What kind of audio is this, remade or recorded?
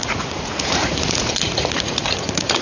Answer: remade